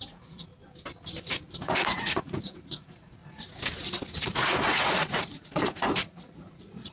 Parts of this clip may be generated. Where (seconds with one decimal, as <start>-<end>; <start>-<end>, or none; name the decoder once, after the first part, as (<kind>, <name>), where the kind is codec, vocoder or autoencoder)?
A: 0.0-0.5 (vocoder, Vocos); 1.6-3.2; 4.2-6.9